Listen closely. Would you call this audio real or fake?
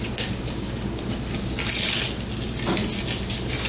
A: real